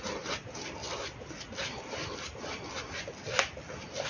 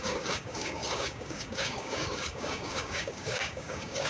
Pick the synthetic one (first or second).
second